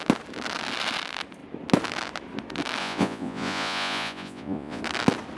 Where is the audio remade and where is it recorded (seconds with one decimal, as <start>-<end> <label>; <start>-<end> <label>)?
0.0-2.8 recorded; 2.8-4.8 remade; 4.8-5.4 recorded